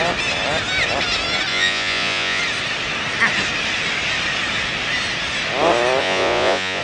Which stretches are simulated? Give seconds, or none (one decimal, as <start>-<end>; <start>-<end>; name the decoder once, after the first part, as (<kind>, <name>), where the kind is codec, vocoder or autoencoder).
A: 1.5-2.4 (vocoder, Vocos); 6.0-6.8